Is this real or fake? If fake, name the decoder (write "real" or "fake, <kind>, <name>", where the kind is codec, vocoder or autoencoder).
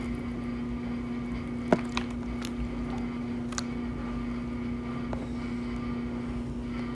real